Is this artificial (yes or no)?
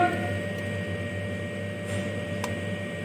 no